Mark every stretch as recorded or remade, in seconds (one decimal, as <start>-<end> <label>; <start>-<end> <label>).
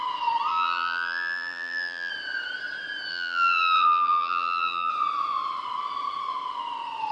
0.0-0.5 recorded; 0.5-2.1 remade; 2.1-3.1 recorded; 3.1-4.9 remade; 4.9-7.1 recorded